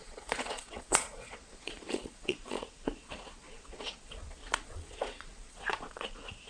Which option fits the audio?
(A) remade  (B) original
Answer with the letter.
A